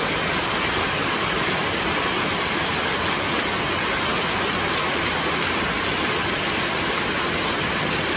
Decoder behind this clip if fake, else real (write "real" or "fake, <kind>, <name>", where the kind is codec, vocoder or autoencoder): real